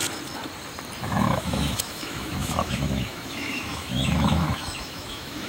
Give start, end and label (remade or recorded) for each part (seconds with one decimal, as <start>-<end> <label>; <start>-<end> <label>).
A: 0.0-1.0 recorded; 1.0-5.5 remade